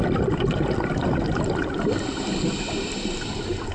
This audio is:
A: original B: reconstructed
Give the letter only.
A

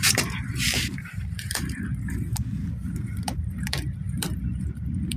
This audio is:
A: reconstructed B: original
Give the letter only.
A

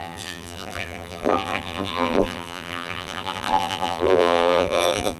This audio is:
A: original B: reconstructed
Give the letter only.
B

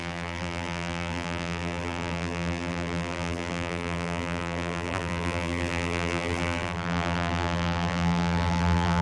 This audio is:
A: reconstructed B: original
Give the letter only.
A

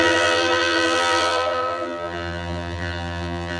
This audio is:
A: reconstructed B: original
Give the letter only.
A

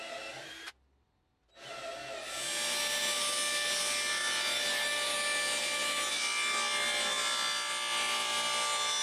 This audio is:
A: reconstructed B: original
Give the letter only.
B